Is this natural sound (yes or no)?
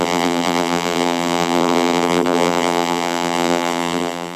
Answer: no